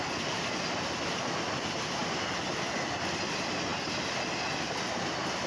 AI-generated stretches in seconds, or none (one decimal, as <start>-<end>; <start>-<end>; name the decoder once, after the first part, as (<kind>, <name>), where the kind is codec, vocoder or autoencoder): none